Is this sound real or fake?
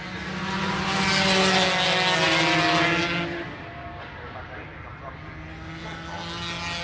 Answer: real